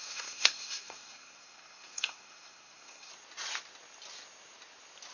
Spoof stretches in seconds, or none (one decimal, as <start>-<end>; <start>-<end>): 0.0-3.1